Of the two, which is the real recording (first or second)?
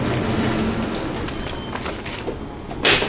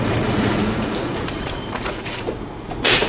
first